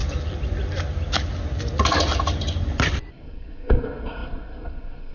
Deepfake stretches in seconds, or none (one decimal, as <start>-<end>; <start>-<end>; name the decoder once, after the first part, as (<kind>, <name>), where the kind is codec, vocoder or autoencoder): 3.1-5.1 (codec, SNAC)